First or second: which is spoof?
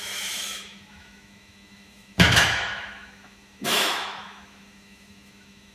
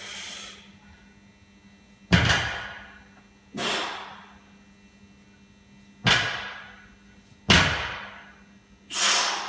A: first